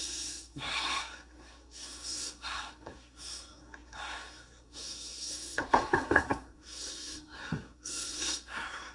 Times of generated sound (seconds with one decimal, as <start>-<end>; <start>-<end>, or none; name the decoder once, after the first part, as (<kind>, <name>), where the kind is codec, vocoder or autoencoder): 0.0-8.9 (codec, SNAC)